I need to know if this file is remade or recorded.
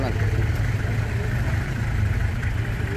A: recorded